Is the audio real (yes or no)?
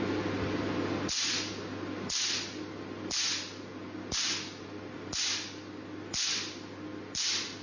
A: yes